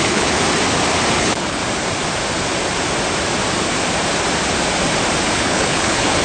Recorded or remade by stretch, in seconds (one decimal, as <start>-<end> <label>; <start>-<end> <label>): 0.0-0.4 remade; 0.4-1.2 recorded; 1.2-1.6 remade; 1.6-5.3 recorded; 5.3-6.2 remade